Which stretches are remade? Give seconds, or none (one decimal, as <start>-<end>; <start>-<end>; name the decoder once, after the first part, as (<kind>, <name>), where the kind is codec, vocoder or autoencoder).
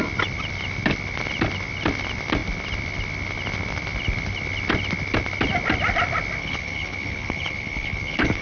6.4-8.4 (codec, HILCodec)